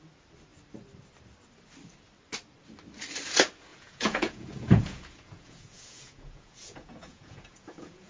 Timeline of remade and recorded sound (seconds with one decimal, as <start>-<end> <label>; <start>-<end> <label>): 0.0-3.7 recorded; 3.7-8.1 remade